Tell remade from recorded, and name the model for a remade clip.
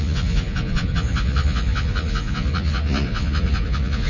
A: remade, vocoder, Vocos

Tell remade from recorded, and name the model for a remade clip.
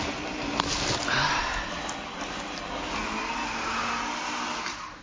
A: recorded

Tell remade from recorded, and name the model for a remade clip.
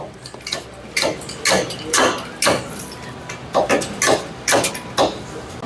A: recorded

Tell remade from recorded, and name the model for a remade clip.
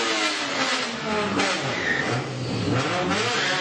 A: recorded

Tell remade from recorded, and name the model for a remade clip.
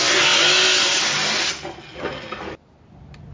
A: recorded